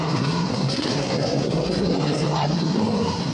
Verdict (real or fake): fake